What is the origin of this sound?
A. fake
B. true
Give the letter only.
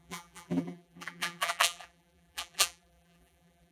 A